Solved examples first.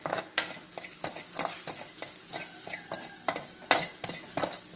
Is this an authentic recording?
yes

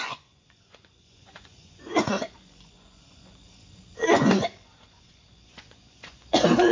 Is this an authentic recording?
no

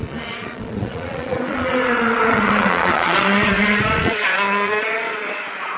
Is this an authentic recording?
no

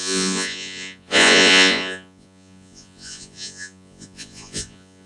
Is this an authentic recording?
no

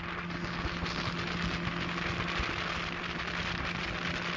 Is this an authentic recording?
yes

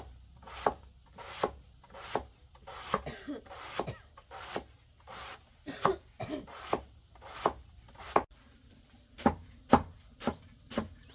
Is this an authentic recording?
yes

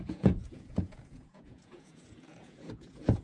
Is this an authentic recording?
no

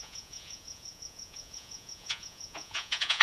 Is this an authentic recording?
no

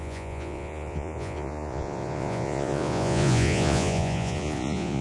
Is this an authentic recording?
no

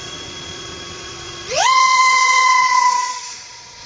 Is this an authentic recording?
no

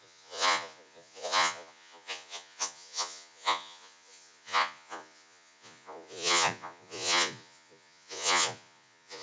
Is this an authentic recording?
no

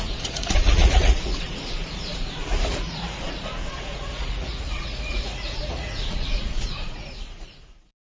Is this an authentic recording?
no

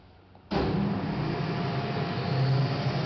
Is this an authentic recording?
yes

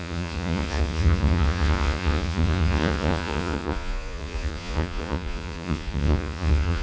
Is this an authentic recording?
no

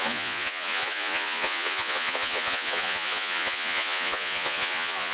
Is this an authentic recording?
no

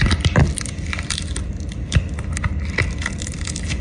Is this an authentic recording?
yes